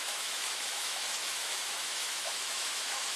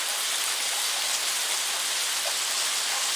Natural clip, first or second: second